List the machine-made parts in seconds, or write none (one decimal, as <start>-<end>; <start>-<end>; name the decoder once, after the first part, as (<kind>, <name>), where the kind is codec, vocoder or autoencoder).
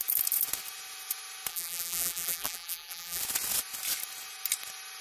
1.5-3.2 (vocoder, BigVGAN v2)